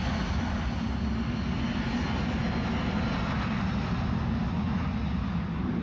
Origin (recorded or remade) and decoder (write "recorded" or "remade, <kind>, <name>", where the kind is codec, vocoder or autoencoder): recorded